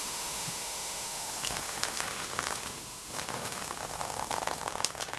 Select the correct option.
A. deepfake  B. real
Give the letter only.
A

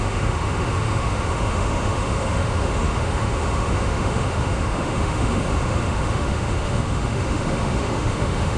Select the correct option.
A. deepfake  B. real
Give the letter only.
A